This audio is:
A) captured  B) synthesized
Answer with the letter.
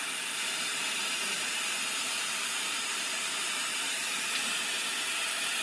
B